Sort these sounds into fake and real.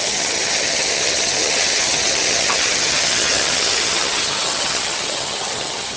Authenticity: fake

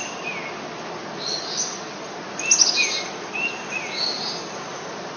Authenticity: real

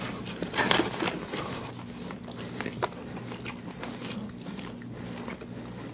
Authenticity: real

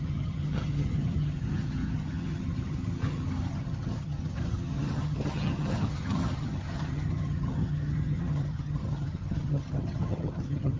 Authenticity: fake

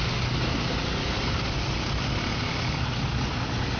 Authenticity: real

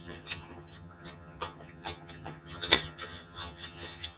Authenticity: fake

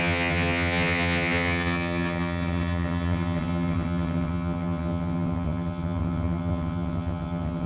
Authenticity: fake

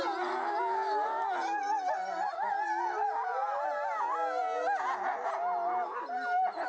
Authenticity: real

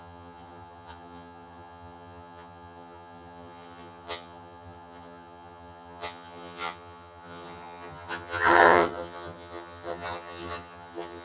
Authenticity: fake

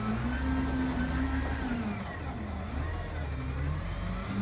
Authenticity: real